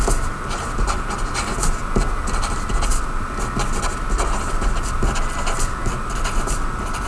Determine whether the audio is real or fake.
real